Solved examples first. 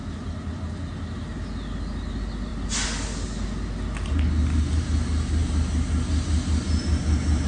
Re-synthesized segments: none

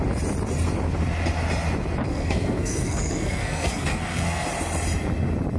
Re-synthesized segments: 2.1-4.5 (codec, SNAC)

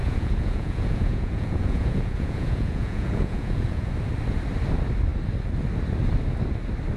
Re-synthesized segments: 0.0-3.9 (vocoder, Vocos)

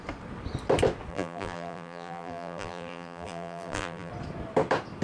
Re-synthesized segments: 1.1-4.1 (vocoder, BigVGAN v2)

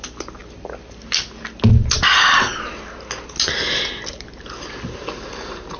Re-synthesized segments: none